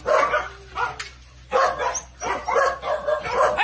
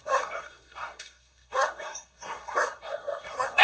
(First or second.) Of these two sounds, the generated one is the second